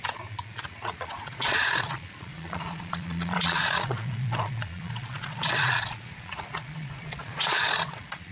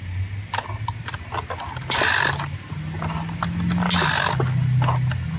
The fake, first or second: first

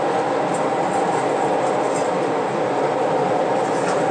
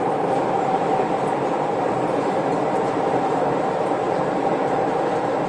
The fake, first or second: second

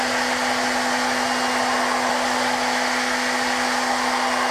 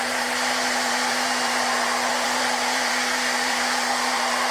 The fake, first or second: second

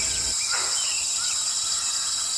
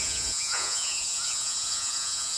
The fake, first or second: second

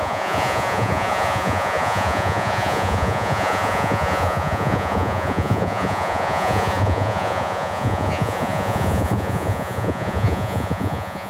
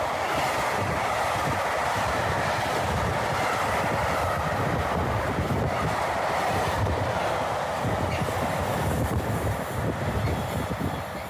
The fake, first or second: first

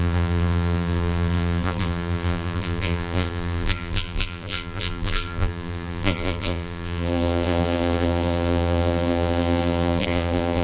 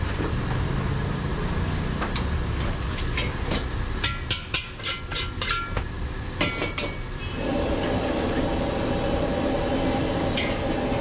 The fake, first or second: first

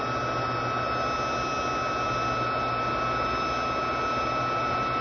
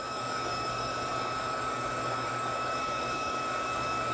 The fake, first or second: second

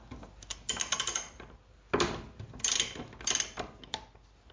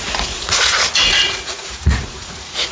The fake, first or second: second